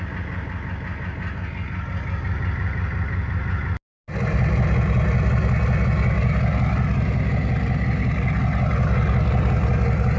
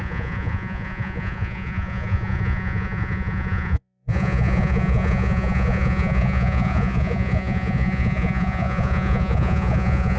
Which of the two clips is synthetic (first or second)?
second